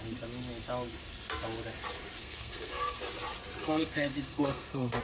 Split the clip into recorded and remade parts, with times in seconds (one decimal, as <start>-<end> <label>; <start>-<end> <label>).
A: 0.0-2.2 recorded; 2.2-3.0 remade; 3.0-3.6 recorded; 3.6-5.0 remade